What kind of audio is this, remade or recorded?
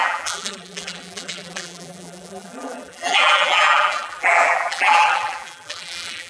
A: remade